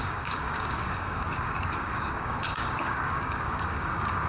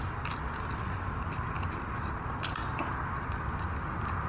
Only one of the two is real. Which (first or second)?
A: second